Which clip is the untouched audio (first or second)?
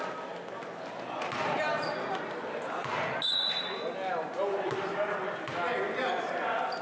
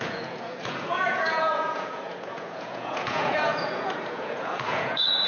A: first